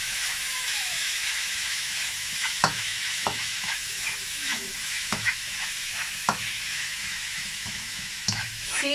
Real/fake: fake